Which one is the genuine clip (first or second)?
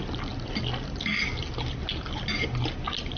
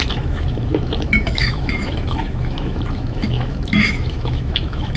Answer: first